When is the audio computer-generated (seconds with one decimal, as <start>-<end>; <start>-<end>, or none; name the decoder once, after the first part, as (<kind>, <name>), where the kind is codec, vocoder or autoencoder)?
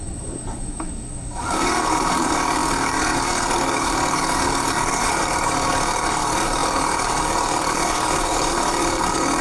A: 0.0-9.4 (codec, DAC)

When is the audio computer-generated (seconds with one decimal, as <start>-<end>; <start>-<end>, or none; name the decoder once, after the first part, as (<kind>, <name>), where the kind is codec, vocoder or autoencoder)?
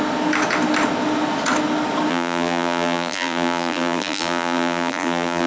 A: 2.1-5.5 (vocoder, BigVGAN v2)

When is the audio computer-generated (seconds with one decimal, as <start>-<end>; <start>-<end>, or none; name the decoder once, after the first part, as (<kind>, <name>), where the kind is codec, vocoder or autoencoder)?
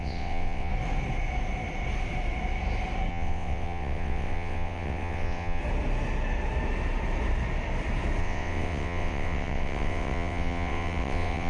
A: 0.0-0.7 (vocoder, WaveNeXt); 3.1-5.6; 8.2-11.5